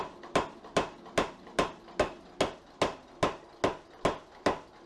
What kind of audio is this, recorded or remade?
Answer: recorded